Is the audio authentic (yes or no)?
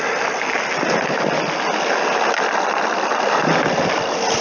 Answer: yes